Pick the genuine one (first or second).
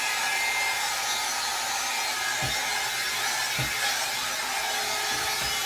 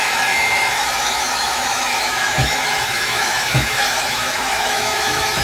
first